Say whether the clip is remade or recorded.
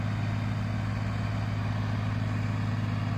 recorded